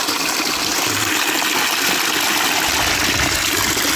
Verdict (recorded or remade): recorded